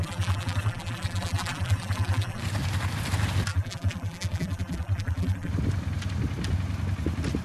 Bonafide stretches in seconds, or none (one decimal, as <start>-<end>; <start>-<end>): 2.4-3.5; 5.5-7.4